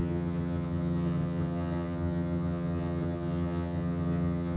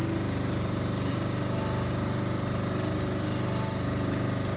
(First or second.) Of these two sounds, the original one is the second